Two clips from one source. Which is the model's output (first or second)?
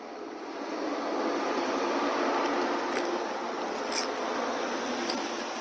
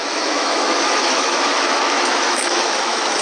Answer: second